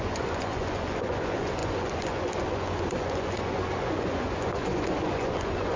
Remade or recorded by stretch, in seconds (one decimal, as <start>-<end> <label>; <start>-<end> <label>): 0.0-5.8 remade